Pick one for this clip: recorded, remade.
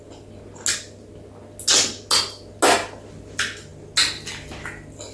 recorded